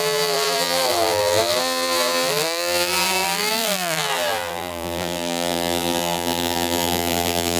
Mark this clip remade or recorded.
remade